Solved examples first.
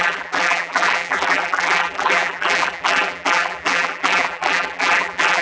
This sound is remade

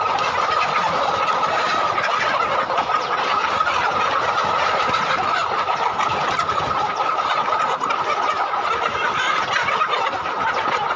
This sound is recorded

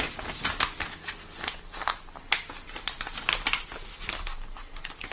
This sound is recorded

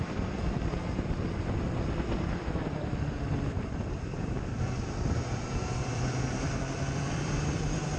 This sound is remade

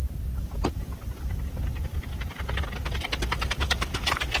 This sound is recorded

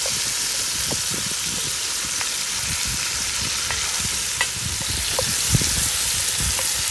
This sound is recorded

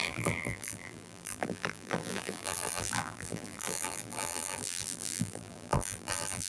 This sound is remade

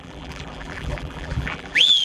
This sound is remade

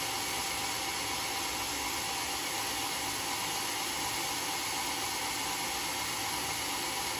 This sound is recorded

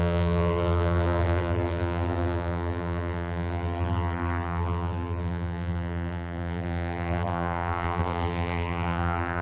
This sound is remade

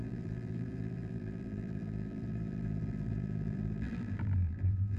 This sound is remade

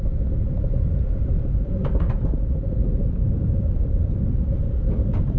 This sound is remade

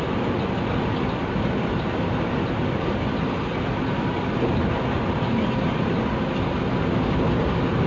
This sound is recorded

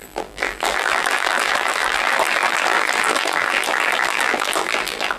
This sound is remade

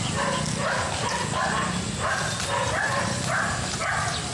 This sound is recorded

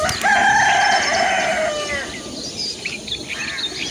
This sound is recorded